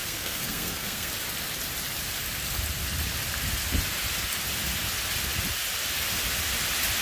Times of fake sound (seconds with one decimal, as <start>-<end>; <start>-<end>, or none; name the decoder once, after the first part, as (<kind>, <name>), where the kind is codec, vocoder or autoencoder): 0.0-1.1 (codec, SNAC)